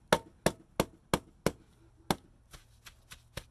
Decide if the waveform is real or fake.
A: real